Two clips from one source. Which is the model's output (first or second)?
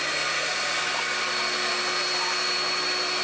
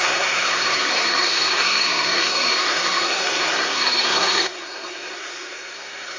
second